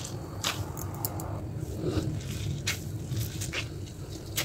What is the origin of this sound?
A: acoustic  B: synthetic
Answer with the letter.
A